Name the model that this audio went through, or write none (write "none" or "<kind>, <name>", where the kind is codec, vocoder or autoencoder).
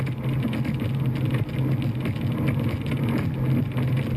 none